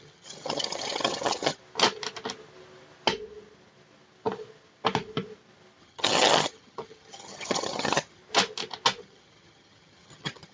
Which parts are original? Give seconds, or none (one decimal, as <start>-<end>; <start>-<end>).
1.6-5.8; 8.2-9.0